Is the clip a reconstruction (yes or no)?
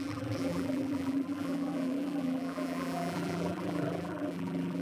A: yes